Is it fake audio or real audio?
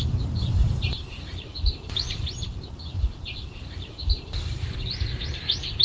fake